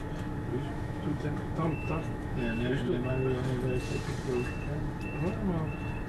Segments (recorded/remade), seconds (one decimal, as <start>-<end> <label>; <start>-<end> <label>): 0.0-0.5 recorded; 0.5-3.1 remade; 3.1-6.1 recorded